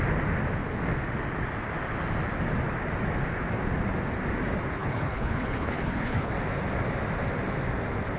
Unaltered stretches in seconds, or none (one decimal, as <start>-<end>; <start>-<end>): 0.0-4.8; 6.3-8.2